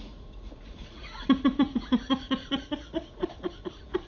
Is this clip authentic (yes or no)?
no